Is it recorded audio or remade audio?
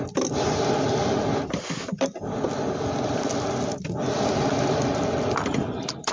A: recorded